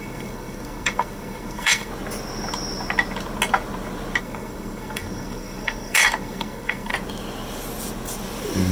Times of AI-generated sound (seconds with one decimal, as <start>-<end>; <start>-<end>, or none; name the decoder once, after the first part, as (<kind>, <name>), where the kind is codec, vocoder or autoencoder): 0.0-1.9 (codec, SNAC); 4.2-6.9